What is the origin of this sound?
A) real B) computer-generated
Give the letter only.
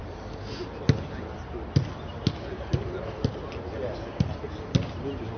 A